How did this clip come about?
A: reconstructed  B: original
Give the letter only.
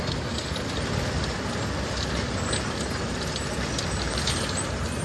B